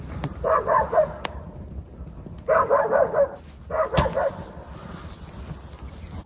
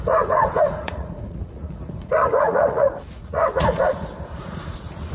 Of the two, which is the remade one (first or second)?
second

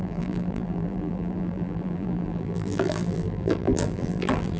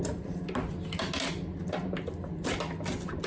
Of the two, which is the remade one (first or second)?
first